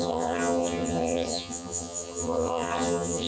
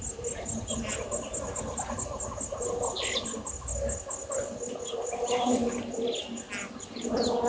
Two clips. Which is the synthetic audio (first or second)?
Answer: first